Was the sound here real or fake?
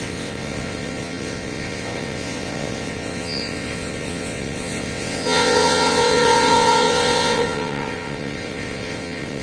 fake